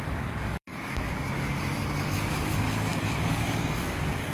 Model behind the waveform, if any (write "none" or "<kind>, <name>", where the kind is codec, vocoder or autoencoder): codec, DAC